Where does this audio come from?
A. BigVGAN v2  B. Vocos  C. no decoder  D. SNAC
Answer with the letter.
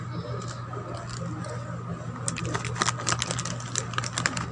C